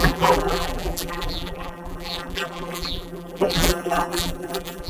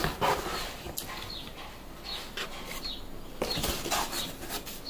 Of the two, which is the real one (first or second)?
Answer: second